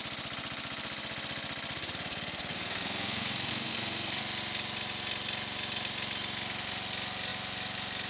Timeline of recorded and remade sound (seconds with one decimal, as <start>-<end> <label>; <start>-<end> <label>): 0.0-2.5 recorded; 2.5-4.2 remade; 4.2-8.1 recorded